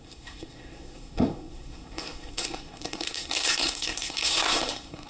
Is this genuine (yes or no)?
no